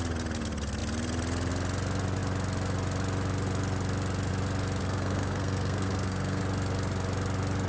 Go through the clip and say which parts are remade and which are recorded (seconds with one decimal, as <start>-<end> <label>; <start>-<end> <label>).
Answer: 0.0-4.8 recorded; 4.8-6.4 remade; 6.4-7.7 recorded